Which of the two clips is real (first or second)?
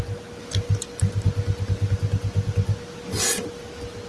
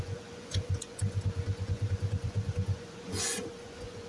first